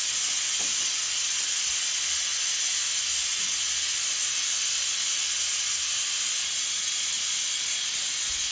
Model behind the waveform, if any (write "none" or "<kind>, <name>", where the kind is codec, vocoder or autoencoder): none